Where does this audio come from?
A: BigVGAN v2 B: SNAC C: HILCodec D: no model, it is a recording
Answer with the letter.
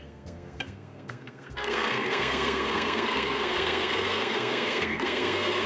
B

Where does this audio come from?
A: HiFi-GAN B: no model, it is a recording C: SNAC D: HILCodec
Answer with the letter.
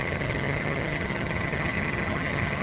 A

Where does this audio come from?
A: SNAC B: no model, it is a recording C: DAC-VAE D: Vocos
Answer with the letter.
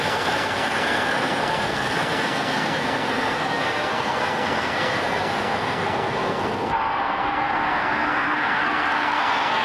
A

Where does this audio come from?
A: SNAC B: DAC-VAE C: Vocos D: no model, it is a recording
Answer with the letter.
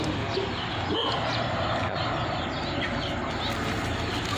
D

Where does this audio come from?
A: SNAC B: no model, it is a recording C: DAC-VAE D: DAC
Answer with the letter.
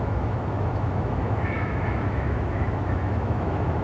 C